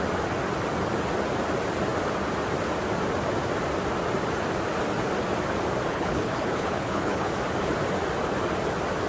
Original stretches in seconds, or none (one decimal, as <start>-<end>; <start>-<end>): 0.0-5.9; 7.3-9.1